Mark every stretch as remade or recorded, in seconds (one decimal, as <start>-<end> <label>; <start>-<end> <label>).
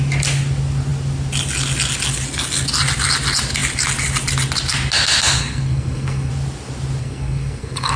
0.0-5.4 recorded; 5.4-6.3 remade; 6.3-7.0 recorded; 7.0-8.0 remade